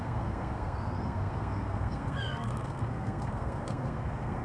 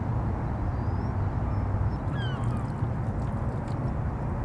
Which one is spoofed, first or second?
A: first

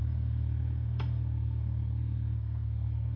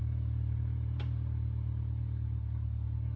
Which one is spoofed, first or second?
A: first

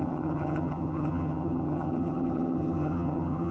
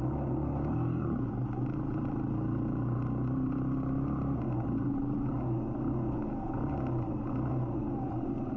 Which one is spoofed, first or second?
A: first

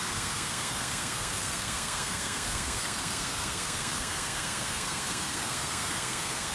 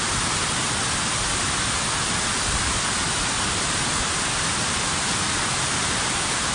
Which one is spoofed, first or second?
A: first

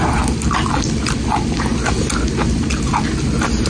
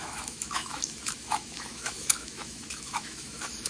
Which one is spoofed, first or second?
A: second